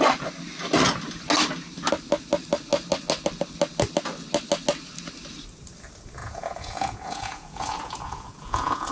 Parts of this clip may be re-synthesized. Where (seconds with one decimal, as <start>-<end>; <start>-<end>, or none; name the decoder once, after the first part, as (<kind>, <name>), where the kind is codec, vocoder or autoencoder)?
6.2-8.9 (vocoder, Vocos)